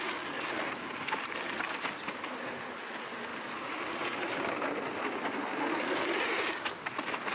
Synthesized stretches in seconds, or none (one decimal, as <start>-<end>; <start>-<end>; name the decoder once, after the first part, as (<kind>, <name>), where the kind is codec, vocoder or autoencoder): none